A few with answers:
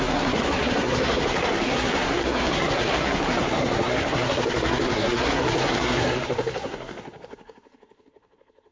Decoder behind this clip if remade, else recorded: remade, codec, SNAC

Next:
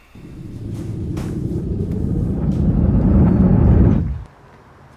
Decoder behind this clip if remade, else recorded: recorded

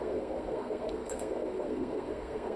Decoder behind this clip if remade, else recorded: remade, codec, SNAC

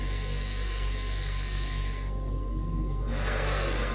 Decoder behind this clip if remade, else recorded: remade, codec, SNAC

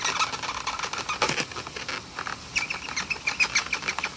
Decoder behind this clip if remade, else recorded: recorded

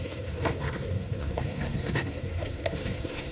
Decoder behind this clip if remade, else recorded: remade, codec, SNAC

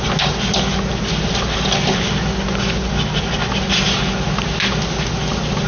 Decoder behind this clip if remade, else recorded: recorded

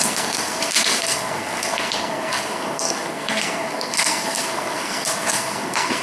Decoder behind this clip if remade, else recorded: remade, codec, SNAC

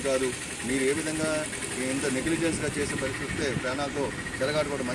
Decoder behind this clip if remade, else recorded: recorded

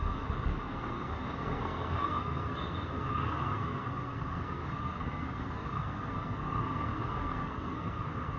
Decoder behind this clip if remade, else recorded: remade, codec, SNAC